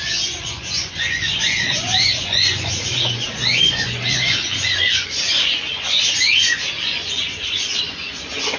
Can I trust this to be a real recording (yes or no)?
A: no